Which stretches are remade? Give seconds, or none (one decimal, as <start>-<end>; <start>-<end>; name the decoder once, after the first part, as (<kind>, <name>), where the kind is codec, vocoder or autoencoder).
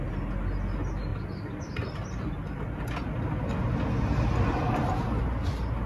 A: none